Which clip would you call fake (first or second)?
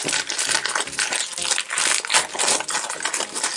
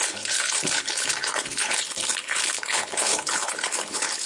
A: second